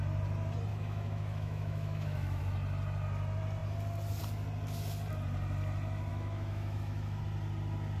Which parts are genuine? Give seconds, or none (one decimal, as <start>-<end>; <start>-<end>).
0.0-0.7; 2.4-6.1; 7.2-8.0